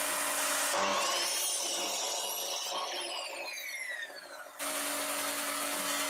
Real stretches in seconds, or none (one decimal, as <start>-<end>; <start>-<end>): 0.0-6.1